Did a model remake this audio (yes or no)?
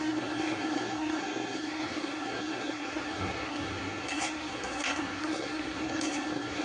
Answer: yes